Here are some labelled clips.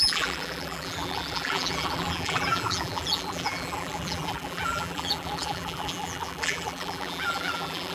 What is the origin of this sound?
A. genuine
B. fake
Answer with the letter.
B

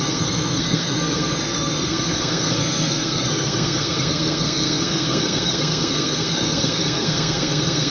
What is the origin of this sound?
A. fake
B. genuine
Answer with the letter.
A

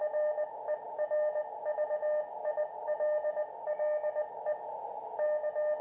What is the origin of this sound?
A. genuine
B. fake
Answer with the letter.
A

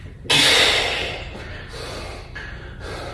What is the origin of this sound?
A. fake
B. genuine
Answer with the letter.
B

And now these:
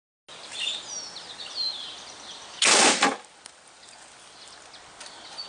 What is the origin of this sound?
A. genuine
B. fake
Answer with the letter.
A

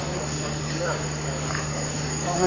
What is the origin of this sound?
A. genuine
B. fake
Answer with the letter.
B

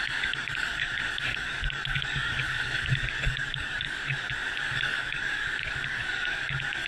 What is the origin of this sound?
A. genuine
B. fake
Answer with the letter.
B